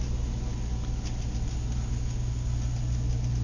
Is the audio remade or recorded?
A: recorded